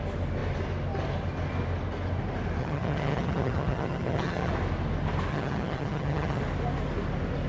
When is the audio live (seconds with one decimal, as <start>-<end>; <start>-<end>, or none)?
0.0-2.6; 4.5-5.3; 6.4-7.5